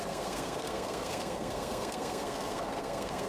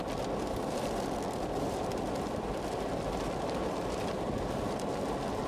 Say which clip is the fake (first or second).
first